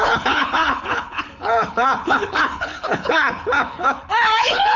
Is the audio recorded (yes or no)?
no